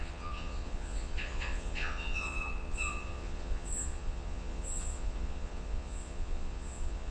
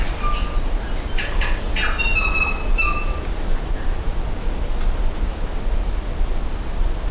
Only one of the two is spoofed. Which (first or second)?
first